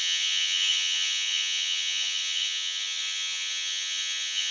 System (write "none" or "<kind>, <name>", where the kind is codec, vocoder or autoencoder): vocoder, HiFi-GAN